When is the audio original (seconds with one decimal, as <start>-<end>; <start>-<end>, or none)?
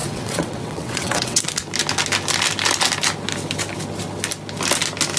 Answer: 1.4-5.2